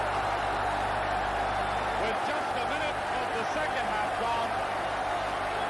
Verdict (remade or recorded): recorded